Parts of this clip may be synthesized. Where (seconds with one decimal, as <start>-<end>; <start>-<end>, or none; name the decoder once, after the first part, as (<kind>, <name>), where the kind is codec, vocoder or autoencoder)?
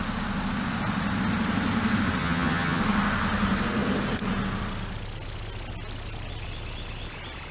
2.2-2.8 (vocoder, HiFi-GAN)